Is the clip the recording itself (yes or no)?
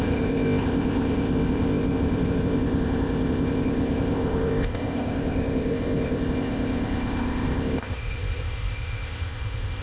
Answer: no